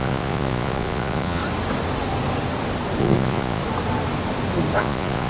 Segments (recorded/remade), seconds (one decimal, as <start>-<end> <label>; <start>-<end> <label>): 0.0-1.4 remade; 1.4-3.0 recorded; 3.0-3.6 remade; 3.6-4.8 recorded; 4.8-5.3 remade